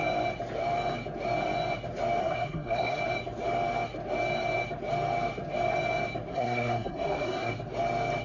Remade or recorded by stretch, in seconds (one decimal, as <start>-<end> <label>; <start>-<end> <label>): 0.0-2.2 recorded; 2.2-3.0 remade; 3.0-6.3 recorded; 6.3-7.5 remade; 7.5-8.2 recorded